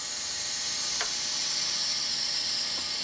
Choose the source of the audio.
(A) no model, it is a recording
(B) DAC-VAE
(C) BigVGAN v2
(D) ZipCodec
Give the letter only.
A